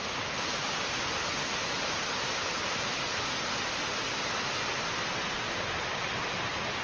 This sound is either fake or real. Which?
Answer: real